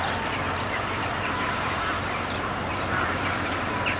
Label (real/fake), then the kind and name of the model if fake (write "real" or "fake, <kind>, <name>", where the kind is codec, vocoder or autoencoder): fake, vocoder, BigVGAN v2